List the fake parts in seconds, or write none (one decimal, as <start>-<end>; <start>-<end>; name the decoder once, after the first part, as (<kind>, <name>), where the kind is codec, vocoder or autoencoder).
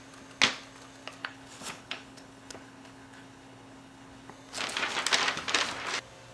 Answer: 1.2-4.3 (codec, HILCodec)